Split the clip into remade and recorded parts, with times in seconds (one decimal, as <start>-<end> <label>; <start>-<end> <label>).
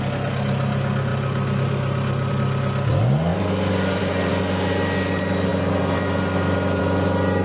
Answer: 0.0-7.4 recorded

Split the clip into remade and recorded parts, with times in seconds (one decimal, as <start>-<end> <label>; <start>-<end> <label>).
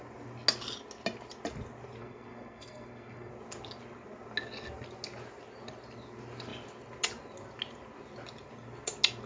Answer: 0.0-2.0 recorded; 2.0-3.3 remade; 3.3-9.3 recorded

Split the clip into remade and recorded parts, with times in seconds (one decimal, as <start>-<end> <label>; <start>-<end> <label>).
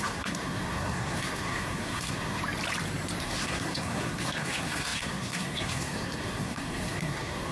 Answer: 0.0-2.4 remade; 2.4-3.2 recorded; 3.2-7.5 remade